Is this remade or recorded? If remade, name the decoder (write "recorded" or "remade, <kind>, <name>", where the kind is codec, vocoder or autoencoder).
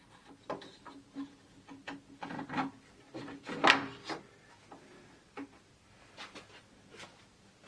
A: recorded